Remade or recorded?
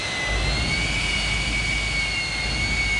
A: recorded